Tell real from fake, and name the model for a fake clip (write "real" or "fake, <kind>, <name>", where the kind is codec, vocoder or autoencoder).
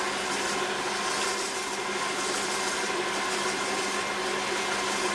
real